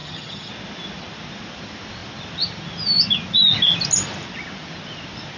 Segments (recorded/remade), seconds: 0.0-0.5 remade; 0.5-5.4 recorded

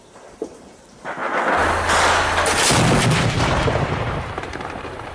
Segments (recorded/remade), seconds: 0.0-1.2 remade; 1.2-3.3 recorded; 3.3-5.1 remade

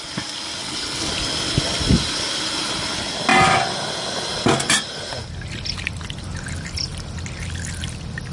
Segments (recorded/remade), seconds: 0.0-0.6 recorded; 0.6-1.1 remade; 1.1-8.3 recorded

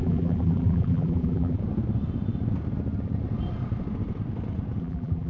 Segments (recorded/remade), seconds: 0.0-1.6 remade; 1.6-4.8 recorded; 4.8-5.3 remade

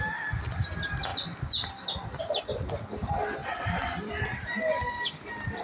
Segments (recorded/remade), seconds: 0.0-3.4 recorded; 3.4-4.2 remade; 4.2-5.6 recorded

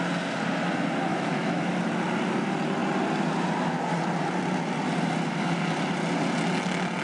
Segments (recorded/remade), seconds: 0.0-1.1 recorded; 1.1-1.8 remade; 1.8-7.0 recorded

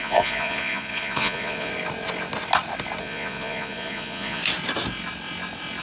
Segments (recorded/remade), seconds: 0.0-1.7 remade; 1.7-3.0 recorded; 3.0-4.4 remade; 4.4-5.8 recorded

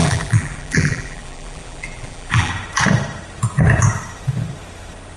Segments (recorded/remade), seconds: 0.0-2.5 remade; 2.5-5.2 recorded